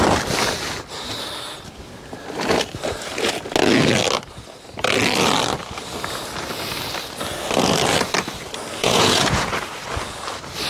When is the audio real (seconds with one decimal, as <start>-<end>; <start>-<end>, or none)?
0.0-8.8; 9.5-10.7